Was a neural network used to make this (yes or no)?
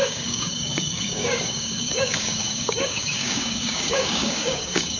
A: yes